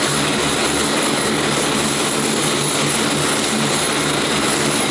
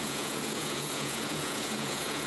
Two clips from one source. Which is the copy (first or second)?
second